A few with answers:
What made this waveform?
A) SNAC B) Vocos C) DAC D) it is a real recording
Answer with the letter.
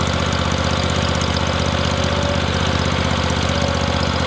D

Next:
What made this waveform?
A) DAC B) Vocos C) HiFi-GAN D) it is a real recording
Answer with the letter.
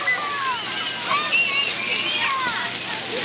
D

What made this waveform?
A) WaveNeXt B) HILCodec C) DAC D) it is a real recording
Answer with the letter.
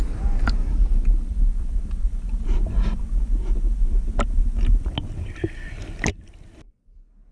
D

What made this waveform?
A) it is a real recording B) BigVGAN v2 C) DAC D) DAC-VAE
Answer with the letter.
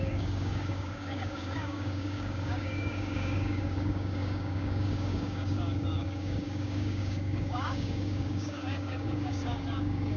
C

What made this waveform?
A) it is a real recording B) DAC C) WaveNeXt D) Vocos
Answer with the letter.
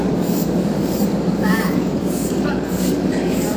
B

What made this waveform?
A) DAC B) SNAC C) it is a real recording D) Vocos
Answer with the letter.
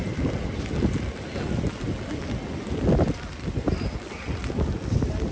C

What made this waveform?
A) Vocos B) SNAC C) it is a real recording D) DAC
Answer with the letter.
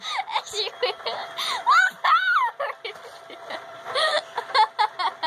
C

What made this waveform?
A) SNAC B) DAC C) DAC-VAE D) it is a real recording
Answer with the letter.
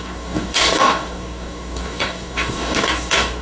B